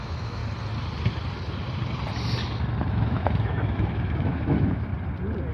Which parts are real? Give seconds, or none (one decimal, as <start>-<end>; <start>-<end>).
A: 0.4-2.9; 4.9-5.5